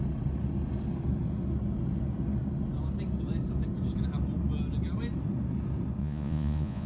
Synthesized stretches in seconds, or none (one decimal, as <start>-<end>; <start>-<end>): 6.0-6.9